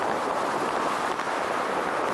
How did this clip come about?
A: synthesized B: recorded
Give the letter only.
B